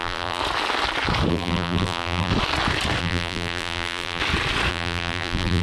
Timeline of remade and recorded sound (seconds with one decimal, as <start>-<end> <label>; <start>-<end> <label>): 0.0-0.4 remade; 0.4-1.3 recorded; 1.3-2.3 remade; 2.3-3.0 recorded; 3.0-4.2 remade; 4.2-4.7 recorded; 4.7-5.6 remade